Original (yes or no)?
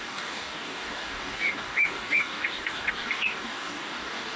no